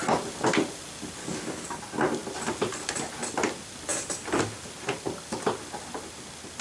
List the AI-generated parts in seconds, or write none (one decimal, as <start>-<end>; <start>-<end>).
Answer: 1.2-1.8